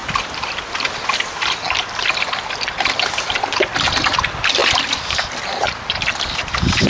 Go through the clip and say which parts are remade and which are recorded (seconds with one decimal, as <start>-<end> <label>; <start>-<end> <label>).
0.0-6.9 recorded